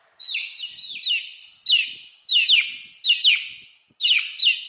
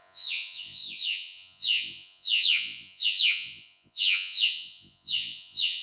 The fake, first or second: second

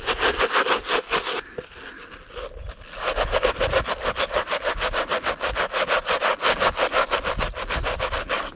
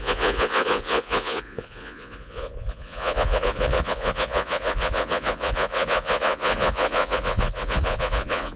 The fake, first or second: second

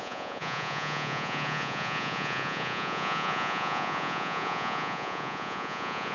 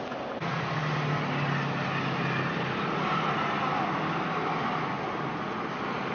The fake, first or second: first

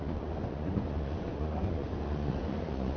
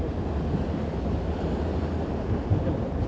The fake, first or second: first